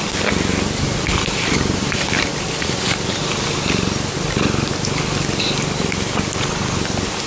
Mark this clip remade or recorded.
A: recorded